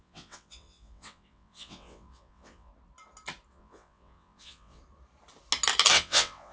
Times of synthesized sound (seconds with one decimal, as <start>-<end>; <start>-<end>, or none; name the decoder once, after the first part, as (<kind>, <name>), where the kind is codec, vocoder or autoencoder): 0.0-2.7 (vocoder, WaveNeXt); 3.5-4.8; 5.9-6.5